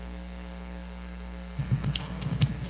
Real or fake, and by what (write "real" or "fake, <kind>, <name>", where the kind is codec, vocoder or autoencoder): fake, codec, SNAC